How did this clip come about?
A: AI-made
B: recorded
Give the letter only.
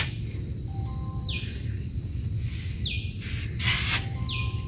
B